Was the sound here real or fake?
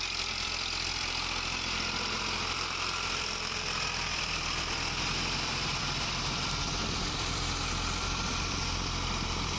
fake